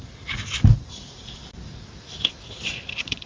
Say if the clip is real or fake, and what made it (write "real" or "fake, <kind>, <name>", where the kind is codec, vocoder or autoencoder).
real